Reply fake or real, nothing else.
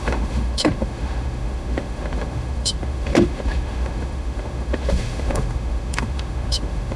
fake